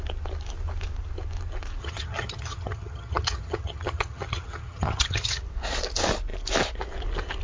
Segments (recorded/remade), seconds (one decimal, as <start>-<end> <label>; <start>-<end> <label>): 0.0-1.8 recorded; 1.8-5.4 remade; 5.4-7.4 recorded